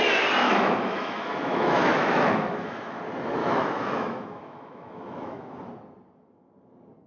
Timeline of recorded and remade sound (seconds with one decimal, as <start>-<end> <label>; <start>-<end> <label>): 0.0-0.4 recorded; 0.4-3.0 remade; 3.0-3.4 recorded; 3.4-5.5 remade; 5.5-7.1 recorded